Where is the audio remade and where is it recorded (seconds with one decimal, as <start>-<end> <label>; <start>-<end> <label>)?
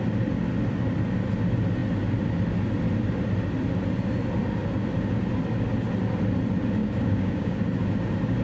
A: 0.0-6.8 recorded; 6.8-7.6 remade; 7.6-8.4 recorded